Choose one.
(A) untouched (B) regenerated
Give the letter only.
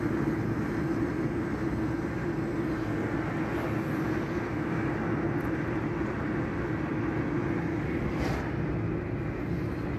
A